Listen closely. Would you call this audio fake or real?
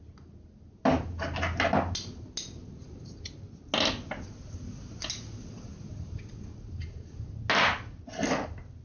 real